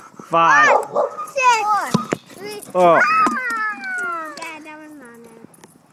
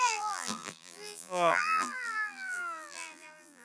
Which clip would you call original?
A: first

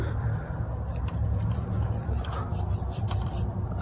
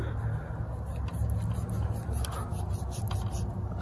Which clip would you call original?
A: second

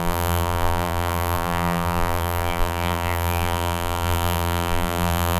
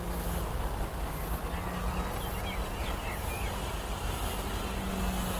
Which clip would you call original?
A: second